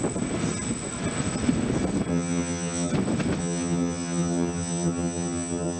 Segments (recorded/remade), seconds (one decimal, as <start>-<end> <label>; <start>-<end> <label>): 0.0-2.1 recorded; 2.1-2.9 remade; 2.9-3.4 recorded; 3.4-5.8 remade